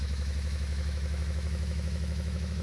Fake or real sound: fake